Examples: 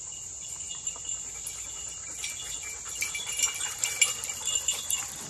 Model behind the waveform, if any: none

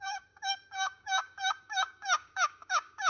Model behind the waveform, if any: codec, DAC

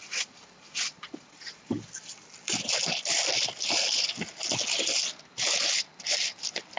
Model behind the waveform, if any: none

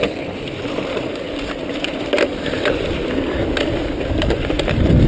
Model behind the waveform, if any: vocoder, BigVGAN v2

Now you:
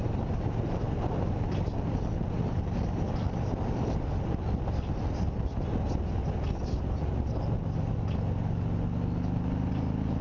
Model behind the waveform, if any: none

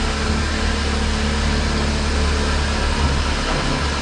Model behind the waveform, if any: none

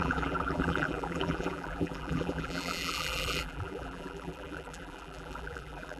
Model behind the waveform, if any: vocoder, BigVGAN v2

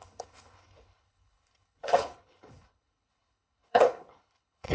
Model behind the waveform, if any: codec, HILCodec